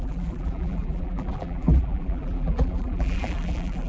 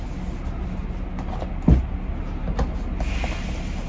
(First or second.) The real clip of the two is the second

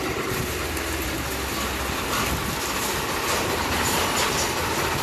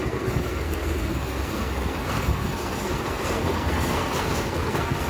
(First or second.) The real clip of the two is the first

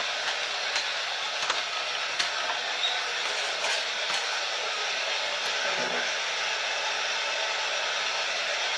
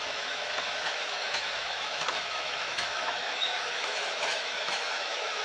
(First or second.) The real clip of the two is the first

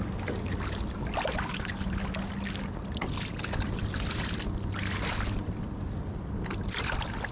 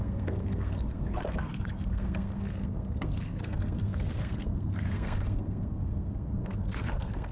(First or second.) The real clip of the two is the first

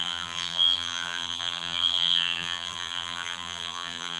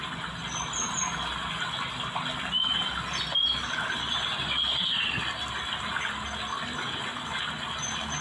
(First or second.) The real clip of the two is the second